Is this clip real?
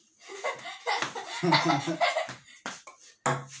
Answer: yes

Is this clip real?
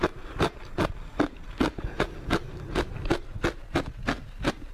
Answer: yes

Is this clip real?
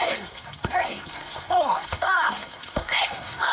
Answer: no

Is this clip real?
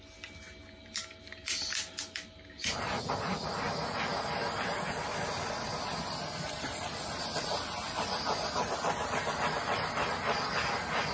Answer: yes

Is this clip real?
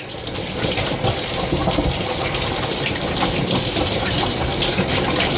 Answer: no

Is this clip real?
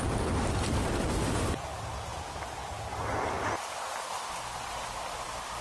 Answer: yes